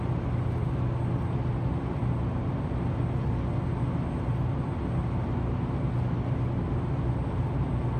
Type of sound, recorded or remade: recorded